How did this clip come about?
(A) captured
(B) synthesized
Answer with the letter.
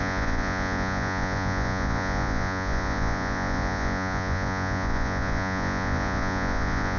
B